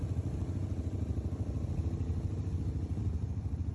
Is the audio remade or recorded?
recorded